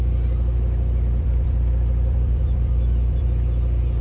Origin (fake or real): fake